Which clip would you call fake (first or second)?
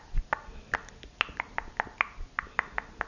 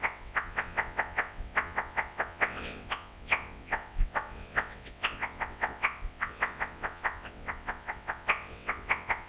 second